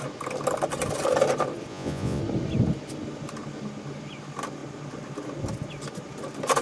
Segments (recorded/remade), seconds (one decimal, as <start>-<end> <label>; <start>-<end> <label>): 0.0-1.7 recorded; 1.7-2.2 remade; 2.2-6.6 recorded